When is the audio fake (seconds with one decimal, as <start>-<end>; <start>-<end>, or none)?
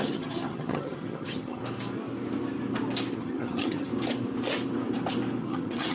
0.0-1.6; 3.1-3.9; 5.4-5.9